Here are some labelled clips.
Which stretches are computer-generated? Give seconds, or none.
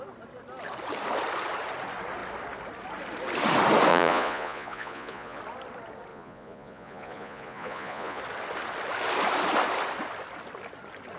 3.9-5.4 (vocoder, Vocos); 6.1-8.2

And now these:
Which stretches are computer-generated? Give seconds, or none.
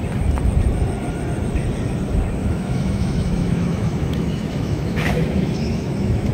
2.4-6.3 (autoencoder, DAC-VAE)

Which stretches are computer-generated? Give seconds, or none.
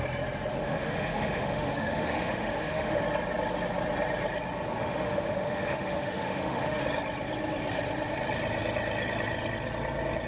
0.6-3.0 (autoencoder, DAC-VAE); 4.8-6.8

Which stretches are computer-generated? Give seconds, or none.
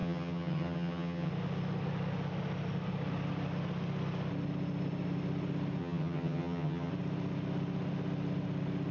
0.0-1.3 (vocoder, HiFi-GAN); 5.8-6.9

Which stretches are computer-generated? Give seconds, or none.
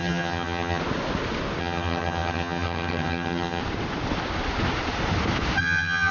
0.0-0.8 (vocoder, HiFi-GAN); 1.6-3.6; 5.6-6.1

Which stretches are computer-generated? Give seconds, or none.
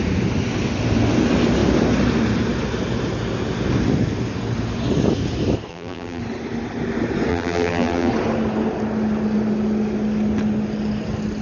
5.7-6.2 (vocoder, BigVGAN v2); 7.3-8.1